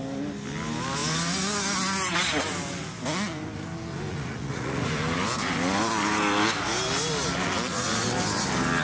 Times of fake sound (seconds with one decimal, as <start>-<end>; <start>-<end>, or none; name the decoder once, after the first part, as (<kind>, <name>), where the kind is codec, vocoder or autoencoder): 4.1-4.9 (vocoder, Vocos)